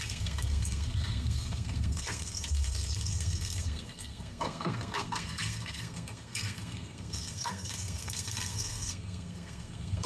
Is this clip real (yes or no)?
no